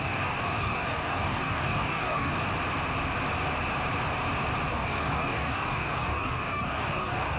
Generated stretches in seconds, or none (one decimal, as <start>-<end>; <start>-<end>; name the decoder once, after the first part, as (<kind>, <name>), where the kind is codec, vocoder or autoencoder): 0.0-2.3 (codec, DAC); 4.7-7.4